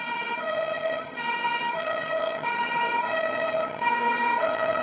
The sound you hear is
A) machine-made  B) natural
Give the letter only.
A